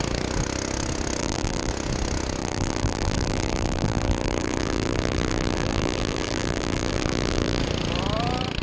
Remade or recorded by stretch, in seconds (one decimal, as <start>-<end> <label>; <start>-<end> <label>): 0.0-1.2 recorded; 1.2-1.7 remade; 1.7-2.4 recorded; 2.4-7.6 remade; 7.6-8.6 recorded